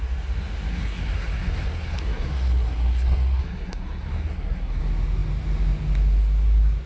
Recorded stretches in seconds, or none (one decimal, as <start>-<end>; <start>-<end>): 0.0-0.7; 4.8-6.9